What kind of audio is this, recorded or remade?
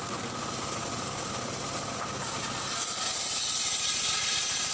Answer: recorded